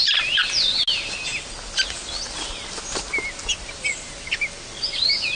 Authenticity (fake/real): real